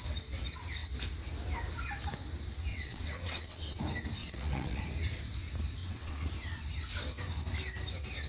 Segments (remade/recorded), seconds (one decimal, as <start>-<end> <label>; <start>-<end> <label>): 0.0-2.7 recorded; 2.7-3.8 remade; 3.8-4.2 recorded; 4.2-4.8 remade; 4.8-5.8 recorded; 5.8-6.3 remade; 6.3-8.3 recorded